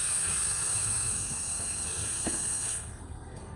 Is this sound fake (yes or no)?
yes